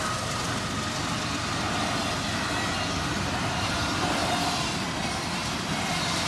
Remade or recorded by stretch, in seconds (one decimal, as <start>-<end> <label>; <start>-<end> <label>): 0.0-6.3 recorded